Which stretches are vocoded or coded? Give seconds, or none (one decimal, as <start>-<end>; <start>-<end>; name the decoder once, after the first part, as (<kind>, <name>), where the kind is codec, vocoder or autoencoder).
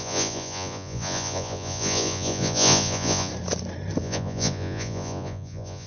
0.0-3.3 (vocoder, Vocos); 4.0-5.9